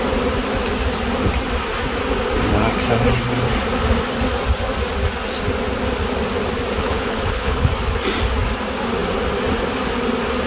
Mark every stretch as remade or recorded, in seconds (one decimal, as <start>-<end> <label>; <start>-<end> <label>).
0.0-6.8 recorded; 6.8-7.7 remade; 7.7-10.5 recorded